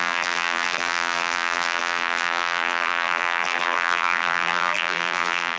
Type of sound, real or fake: fake